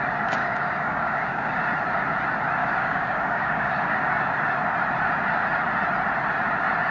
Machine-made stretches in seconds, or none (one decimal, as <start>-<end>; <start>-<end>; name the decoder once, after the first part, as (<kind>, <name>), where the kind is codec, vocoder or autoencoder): 0.4-1.6 (codec, DAC); 2.6-3.7